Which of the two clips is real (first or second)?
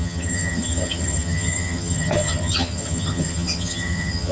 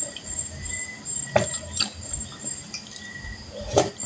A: second